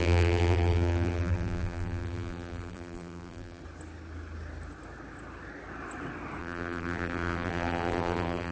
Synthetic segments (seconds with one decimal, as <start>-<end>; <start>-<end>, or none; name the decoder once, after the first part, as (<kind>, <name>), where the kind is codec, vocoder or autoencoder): 0.0-3.6 (vocoder, BigVGAN v2); 6.4-8.5